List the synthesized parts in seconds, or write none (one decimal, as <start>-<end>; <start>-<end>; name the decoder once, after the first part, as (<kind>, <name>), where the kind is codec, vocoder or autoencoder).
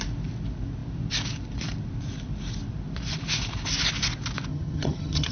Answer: 4.5-5.3 (vocoder, HiFi-GAN)